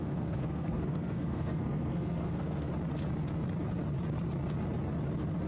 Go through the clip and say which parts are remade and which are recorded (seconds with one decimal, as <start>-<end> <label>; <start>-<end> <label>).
0.0-2.7 remade; 2.7-5.5 recorded